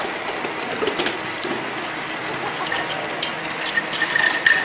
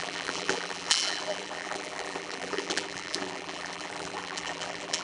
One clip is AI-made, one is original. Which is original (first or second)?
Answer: first